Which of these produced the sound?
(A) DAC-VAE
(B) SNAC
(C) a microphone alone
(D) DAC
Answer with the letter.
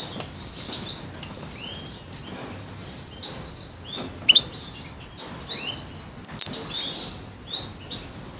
C